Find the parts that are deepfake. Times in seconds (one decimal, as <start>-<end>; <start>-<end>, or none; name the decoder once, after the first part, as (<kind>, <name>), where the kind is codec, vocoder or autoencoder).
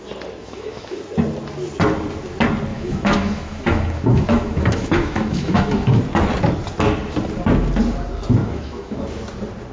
0.4-1.0 (autoencoder, DAC-VAE); 2.7-6.0; 8.4-9.0